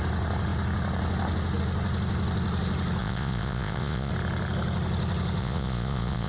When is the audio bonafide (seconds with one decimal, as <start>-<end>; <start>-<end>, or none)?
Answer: 0.0-3.0; 4.1-5.4